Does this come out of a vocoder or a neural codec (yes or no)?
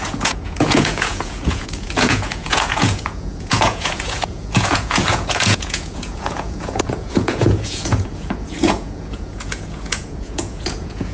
yes